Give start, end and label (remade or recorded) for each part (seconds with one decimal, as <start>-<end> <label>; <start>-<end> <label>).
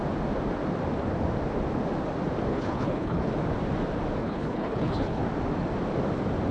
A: 0.0-2.5 recorded; 2.5-3.3 remade; 3.3-4.2 recorded; 4.2-5.2 remade; 5.2-6.5 recorded